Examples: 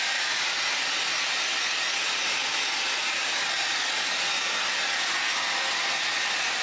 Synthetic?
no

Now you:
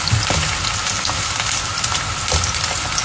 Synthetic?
no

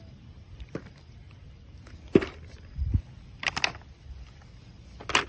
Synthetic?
no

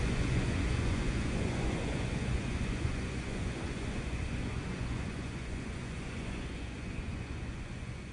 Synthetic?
yes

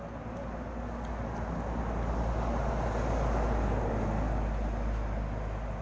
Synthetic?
no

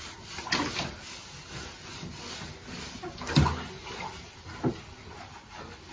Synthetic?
no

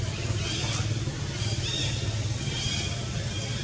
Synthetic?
no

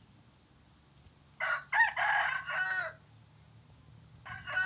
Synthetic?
no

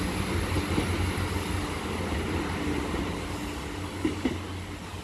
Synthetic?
no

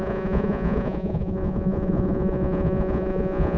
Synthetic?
yes